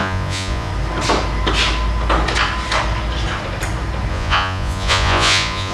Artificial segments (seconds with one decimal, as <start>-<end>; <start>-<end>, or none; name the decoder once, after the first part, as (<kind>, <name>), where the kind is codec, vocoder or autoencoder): 0.0-0.7 (vocoder, Vocos); 4.1-5.7

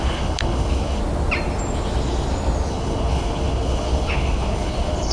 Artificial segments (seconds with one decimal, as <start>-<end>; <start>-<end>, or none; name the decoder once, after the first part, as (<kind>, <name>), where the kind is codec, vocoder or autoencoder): 0.0-1.0 (codec, HILCodec); 2.7-5.1